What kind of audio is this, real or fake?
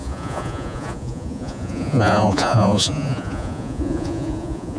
fake